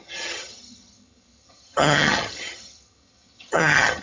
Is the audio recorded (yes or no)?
no